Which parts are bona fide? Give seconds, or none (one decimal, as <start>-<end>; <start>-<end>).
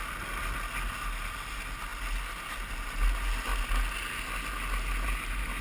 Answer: 0.0-5.6